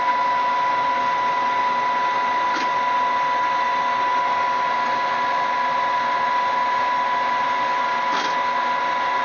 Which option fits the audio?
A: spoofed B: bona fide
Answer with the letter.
B